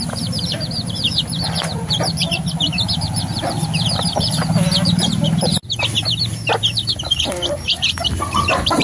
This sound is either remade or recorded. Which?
remade